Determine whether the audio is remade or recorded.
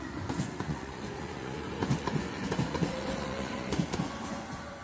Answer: remade